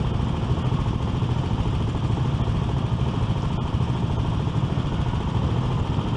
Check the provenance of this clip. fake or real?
real